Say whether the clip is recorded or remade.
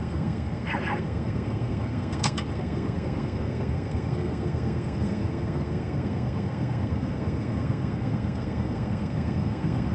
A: remade